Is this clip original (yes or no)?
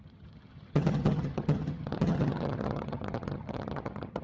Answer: no